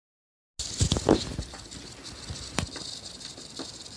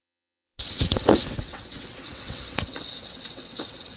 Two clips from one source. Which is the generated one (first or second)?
second